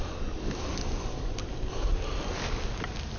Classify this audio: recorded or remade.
recorded